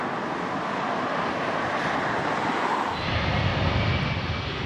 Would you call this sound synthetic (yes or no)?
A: no